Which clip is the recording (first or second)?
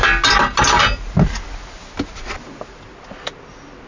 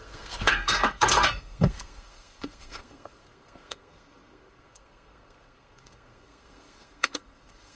first